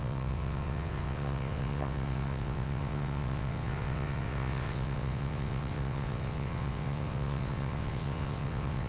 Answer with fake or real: fake